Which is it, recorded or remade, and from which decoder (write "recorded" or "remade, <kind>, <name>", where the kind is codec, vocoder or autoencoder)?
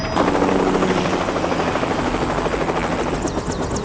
recorded